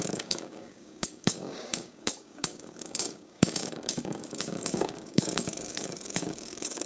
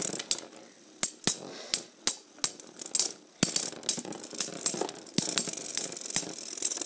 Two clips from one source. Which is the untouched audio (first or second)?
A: second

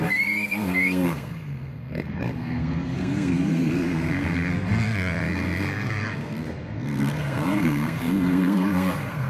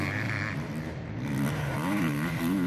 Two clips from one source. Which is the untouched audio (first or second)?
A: second